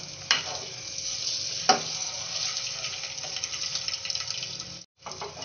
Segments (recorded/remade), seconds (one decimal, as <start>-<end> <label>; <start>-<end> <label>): 0.0-5.4 recorded